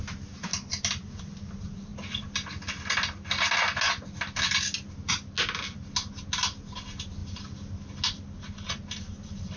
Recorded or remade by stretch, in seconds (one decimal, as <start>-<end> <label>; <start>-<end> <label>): 0.0-9.6 recorded